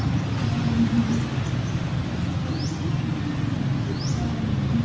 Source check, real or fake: real